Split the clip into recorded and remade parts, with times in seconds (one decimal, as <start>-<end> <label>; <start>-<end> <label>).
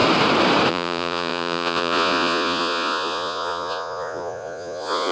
0.0-0.7 recorded; 0.7-5.1 remade